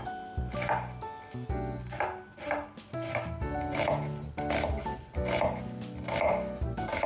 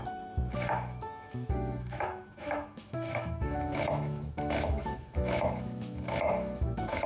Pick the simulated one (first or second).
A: second